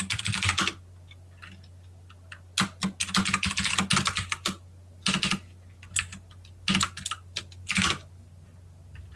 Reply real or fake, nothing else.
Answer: real